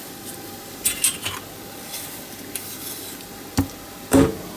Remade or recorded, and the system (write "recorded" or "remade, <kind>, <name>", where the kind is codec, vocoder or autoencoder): recorded